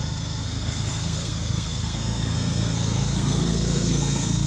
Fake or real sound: fake